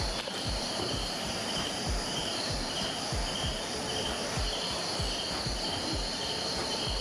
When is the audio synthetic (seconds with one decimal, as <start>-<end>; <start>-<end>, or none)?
0.0-7.0